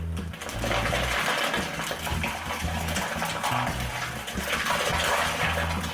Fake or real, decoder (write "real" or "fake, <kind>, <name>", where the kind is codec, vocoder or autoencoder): real